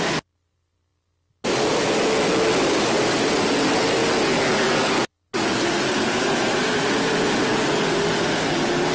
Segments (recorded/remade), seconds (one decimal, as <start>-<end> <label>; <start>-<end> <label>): 0.0-8.9 recorded